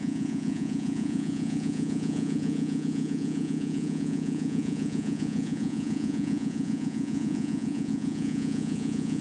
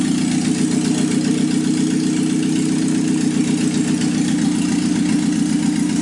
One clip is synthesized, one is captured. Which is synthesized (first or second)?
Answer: first